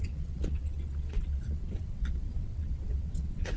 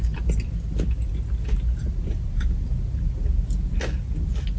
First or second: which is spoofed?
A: first